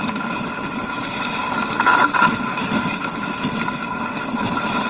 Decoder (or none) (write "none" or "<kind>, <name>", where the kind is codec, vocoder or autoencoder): none